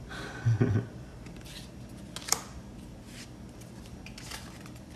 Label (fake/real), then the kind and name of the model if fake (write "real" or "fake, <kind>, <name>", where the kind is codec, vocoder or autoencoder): real